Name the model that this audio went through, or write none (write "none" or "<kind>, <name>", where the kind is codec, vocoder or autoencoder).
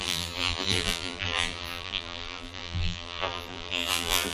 vocoder, BigVGAN v2